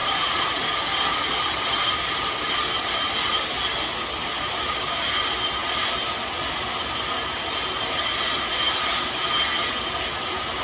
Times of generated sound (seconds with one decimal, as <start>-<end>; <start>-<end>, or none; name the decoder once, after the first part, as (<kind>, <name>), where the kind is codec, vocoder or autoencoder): 0.0-2.9 (vocoder, BigVGAN v2)